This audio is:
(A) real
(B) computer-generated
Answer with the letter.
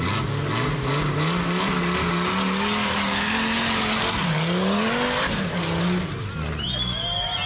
A